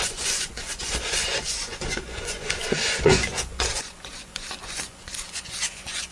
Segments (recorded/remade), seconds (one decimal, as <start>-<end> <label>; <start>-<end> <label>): 0.0-6.1 remade